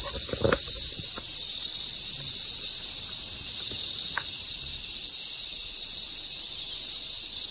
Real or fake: fake